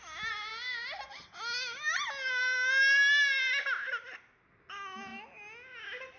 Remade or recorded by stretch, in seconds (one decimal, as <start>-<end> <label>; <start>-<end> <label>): 0.0-6.2 recorded